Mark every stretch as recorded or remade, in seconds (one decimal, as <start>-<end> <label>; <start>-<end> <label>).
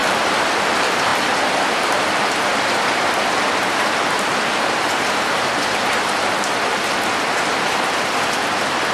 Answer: 0.0-0.7 remade; 0.7-8.9 recorded